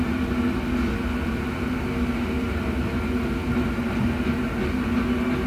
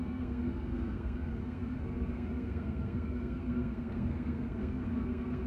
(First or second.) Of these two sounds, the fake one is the second